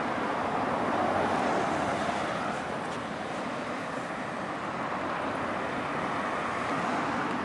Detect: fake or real real